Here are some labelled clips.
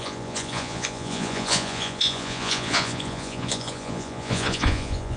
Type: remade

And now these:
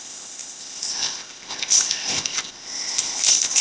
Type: remade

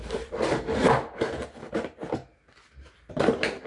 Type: recorded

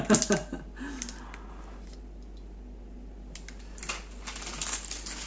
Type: recorded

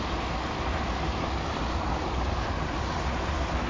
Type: recorded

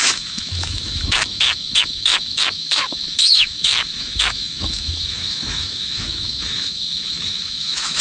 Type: remade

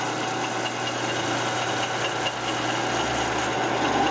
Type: recorded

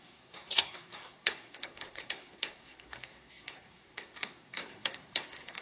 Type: remade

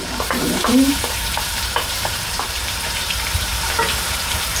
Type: remade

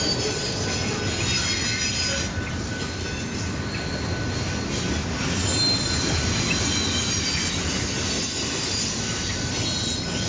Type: recorded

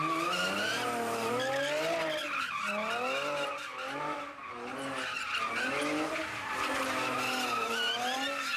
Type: recorded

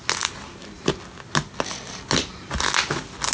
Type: recorded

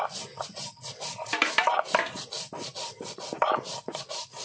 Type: recorded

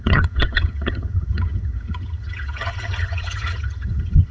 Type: remade